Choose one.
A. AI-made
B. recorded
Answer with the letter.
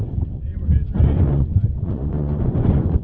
A